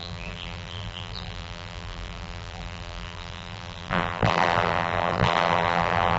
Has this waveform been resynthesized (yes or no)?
yes